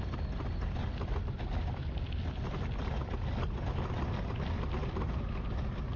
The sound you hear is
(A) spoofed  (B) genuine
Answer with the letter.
B